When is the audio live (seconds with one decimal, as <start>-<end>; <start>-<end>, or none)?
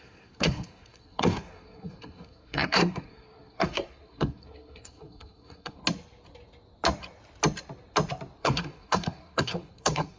5.8-8.4